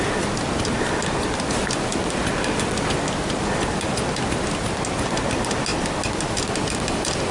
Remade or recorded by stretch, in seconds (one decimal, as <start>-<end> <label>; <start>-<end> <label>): 0.0-7.3 recorded